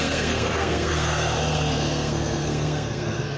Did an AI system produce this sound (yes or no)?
yes